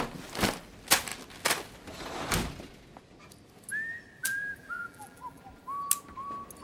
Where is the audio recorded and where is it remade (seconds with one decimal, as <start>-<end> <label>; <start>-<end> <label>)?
0.0-4.2 recorded; 4.2-5.4 remade; 5.4-6.6 recorded